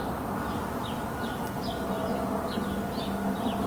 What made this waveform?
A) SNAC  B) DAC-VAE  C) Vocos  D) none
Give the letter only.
D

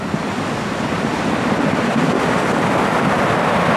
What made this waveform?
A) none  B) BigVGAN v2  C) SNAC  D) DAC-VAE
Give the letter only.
A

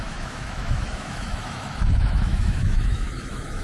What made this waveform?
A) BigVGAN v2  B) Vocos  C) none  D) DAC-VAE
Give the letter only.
D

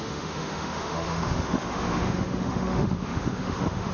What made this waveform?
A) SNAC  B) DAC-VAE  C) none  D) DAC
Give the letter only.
B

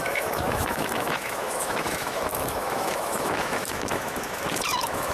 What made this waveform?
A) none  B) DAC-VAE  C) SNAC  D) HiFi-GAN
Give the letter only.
B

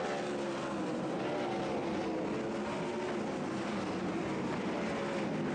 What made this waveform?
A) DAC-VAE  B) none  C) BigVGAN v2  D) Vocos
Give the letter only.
B